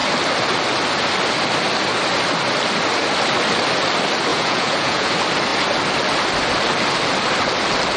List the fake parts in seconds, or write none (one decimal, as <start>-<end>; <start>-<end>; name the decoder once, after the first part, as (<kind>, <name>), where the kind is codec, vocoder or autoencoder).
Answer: 4.3-5.1 (vocoder, Vocos)

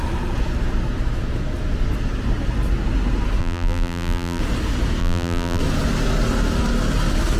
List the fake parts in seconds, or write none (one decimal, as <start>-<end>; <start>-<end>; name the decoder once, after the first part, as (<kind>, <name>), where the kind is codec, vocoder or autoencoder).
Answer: 3.4-4.4 (vocoder, BigVGAN v2); 5.0-5.6